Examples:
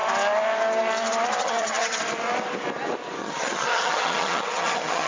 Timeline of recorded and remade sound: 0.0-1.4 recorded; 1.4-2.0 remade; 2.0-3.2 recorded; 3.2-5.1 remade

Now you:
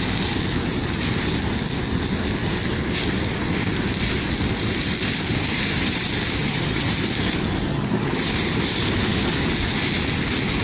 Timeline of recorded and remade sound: 0.0-6.4 recorded; 6.4-6.9 remade; 6.9-7.7 recorded; 7.7-8.3 remade; 8.3-10.6 recorded

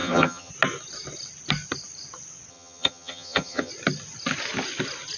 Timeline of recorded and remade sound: 0.0-0.5 remade; 0.5-2.5 recorded; 2.5-3.7 remade; 3.7-5.2 recorded

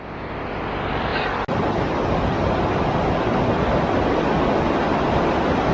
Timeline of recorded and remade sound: 0.0-5.7 recorded